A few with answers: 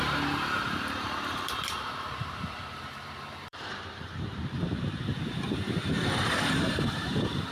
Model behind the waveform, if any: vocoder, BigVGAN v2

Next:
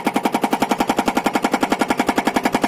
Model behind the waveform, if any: none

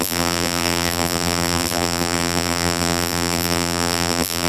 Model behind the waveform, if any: vocoder, BigVGAN v2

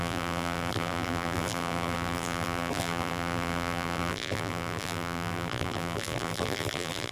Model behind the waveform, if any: vocoder, BigVGAN v2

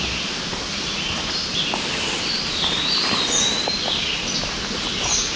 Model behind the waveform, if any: none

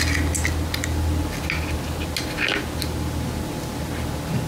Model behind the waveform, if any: none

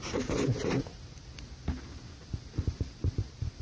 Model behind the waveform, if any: none